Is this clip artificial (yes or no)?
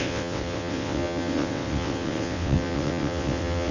yes